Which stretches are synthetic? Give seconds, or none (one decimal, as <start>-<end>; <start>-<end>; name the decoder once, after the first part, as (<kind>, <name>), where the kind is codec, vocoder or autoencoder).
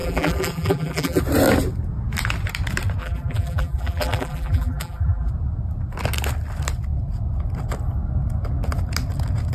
0.0-1.2 (vocoder, BigVGAN v2); 3.0-5.3